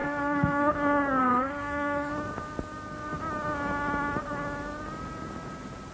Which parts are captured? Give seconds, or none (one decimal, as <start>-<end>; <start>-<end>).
0.7-1.2; 2.1-5.9